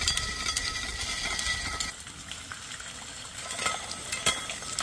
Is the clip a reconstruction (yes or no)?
no